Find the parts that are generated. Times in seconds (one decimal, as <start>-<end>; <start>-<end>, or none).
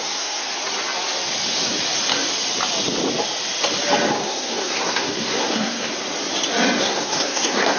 0.0-0.4; 4.2-5.9; 6.8-7.8